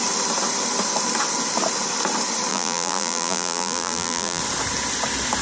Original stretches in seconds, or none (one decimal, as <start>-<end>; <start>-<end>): 0.0-2.5; 4.4-5.4